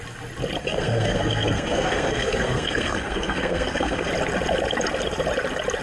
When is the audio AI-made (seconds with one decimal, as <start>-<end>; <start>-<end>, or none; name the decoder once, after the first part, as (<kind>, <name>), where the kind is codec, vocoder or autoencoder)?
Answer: 0.6-4.1 (codec, SNAC)